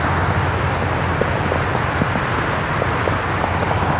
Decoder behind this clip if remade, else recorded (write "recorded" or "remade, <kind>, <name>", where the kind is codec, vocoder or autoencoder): recorded